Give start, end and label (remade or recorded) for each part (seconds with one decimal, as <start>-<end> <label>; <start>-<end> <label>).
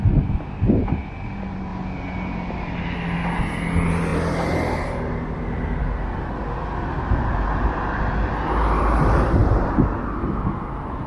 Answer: 0.0-11.1 recorded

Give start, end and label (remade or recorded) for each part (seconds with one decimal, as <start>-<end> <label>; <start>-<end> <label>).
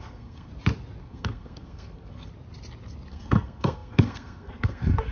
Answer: 0.0-0.5 remade; 0.5-1.0 recorded; 1.0-2.3 remade; 2.3-3.1 recorded; 3.1-5.1 remade